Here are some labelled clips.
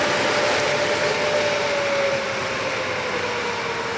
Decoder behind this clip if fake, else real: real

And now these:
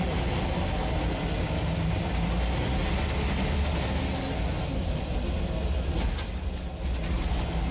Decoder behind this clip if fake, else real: real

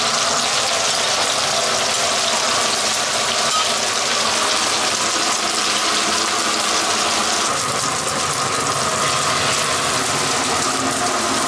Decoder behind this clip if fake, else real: real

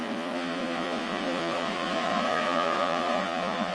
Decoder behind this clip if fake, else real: fake, vocoder, Vocos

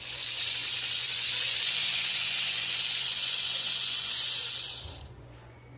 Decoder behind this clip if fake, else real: fake, vocoder, Vocos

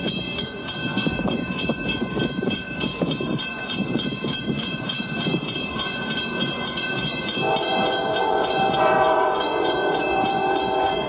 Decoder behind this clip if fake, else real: fake, vocoder, Vocos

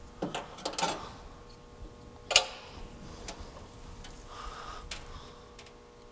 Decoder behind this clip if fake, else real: real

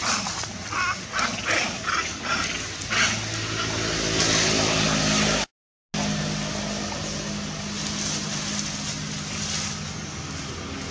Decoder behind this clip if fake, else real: real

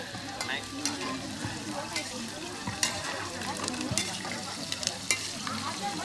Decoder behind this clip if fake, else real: real